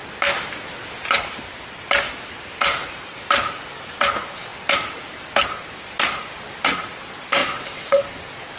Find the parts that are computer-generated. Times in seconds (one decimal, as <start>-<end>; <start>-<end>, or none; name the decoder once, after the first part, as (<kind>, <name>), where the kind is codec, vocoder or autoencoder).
7.4-8.0 (vocoder, WaveNeXt)